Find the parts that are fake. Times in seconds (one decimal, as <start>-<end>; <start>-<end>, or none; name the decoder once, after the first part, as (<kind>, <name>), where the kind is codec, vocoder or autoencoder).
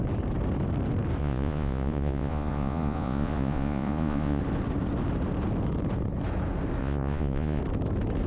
1.2-4.4 (vocoder, Vocos); 6.8-7.6